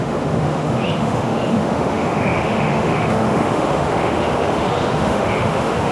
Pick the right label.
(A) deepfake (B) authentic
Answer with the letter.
A